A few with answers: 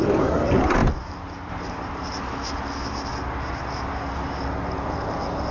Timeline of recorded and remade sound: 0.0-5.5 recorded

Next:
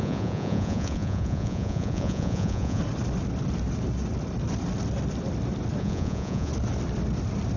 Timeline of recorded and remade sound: 0.0-2.8 remade; 2.8-5.8 recorded; 5.8-6.5 remade; 6.5-7.6 recorded

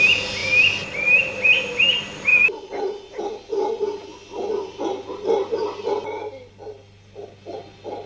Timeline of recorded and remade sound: 0.0-8.1 recorded

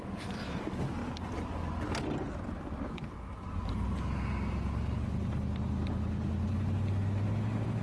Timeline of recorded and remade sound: 0.0-7.8 recorded

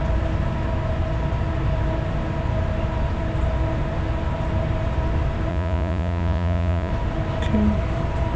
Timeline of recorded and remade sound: 0.0-5.5 recorded; 5.5-6.9 remade; 6.9-8.4 recorded

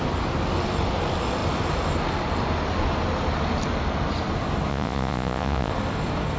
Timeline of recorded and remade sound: 0.0-4.7 recorded; 4.7-5.7 remade; 5.7-6.4 recorded

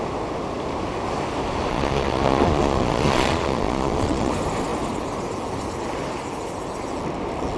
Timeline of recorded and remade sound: 0.0-1.7 recorded; 1.7-4.3 remade; 4.3-7.6 recorded

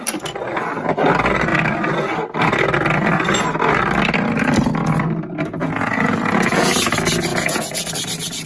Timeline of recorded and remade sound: 0.0-5.6 recorded; 5.6-6.7 remade; 6.7-7.3 recorded; 7.3-7.9 remade; 7.9-8.5 recorded